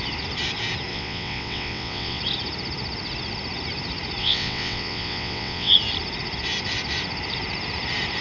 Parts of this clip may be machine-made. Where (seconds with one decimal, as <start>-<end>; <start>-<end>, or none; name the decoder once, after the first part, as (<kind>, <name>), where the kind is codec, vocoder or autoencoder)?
0.9-2.2 (vocoder, WaveNeXt); 4.2-5.7

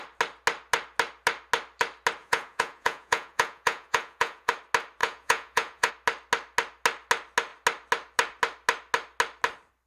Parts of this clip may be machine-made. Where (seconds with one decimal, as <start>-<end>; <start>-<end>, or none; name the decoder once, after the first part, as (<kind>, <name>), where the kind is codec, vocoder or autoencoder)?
2.2-4.5 (vocoder, Vocos); 5.0-5.9

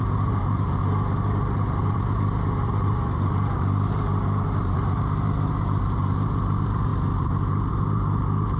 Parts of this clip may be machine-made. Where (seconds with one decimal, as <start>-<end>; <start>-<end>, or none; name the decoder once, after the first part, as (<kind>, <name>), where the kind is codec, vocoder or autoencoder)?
0.0-6.9 (vocoder, BigVGAN v2); 7.7-8.6

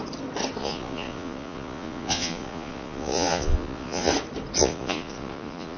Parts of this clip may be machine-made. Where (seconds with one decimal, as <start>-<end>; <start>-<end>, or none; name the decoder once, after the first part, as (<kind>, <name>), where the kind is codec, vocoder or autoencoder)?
0.6-4.1 (vocoder, Vocos); 4.6-5.8